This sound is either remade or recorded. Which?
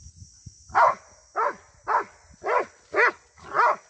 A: recorded